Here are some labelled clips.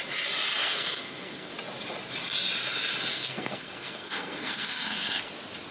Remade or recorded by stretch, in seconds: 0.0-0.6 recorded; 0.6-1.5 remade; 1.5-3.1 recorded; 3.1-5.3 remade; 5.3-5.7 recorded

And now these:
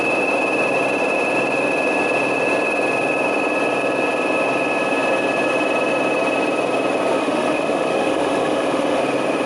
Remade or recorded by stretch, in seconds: 0.0-7.2 recorded; 7.2-9.0 remade; 9.0-9.5 recorded

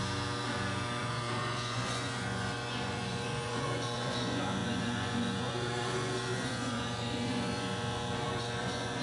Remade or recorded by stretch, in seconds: 0.0-1.0 recorded; 1.0-9.0 remade